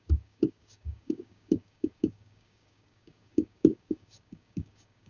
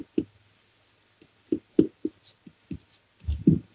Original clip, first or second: second